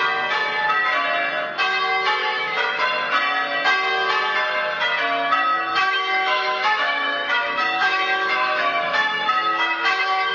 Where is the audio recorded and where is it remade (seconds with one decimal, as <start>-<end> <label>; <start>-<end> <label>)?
0.0-2.2 recorded; 2.2-2.8 remade; 2.8-5.7 recorded; 5.7-10.3 remade